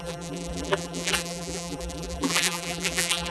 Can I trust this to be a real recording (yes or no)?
no